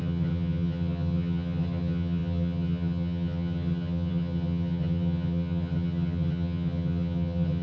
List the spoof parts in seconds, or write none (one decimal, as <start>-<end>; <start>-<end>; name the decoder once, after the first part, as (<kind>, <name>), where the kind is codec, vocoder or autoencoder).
0.0-7.6 (vocoder, HiFi-GAN)

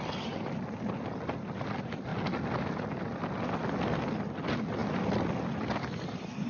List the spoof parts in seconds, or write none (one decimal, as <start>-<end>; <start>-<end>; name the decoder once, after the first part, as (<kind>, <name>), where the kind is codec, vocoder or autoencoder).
none

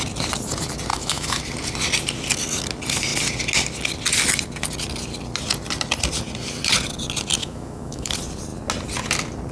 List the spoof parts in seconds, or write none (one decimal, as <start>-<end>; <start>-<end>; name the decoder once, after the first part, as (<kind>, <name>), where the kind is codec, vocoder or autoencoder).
0.9-1.4 (autoencoder, DAC-VAE); 7.4-8.1